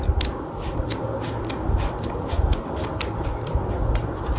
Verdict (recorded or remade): recorded